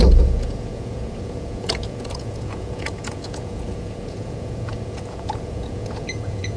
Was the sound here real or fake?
fake